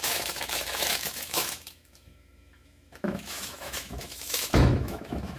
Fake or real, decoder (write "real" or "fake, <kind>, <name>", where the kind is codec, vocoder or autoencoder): fake, autoencoder, DAC-VAE